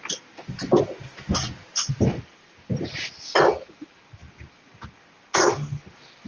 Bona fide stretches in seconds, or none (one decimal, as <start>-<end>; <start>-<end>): 0.0-6.3